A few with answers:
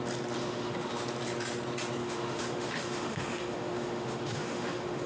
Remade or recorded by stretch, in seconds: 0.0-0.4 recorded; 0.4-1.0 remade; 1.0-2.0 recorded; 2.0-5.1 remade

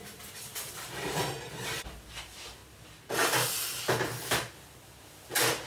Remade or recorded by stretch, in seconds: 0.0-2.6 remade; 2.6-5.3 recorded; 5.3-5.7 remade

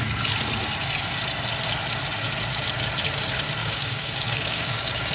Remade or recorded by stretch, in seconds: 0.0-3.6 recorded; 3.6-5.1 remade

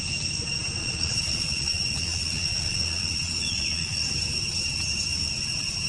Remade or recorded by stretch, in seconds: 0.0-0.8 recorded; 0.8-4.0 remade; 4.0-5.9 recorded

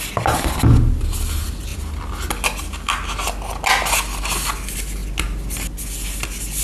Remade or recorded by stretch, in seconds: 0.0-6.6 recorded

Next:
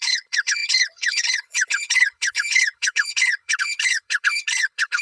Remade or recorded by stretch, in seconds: 0.0-5.0 remade

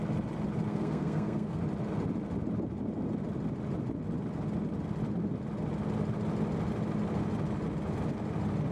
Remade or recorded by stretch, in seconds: 0.0-0.7 recorded; 0.7-1.6 remade; 1.6-8.7 recorded